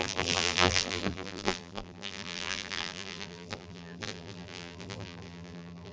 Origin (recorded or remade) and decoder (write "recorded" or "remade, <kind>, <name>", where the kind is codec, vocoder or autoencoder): remade, vocoder, BigVGAN v2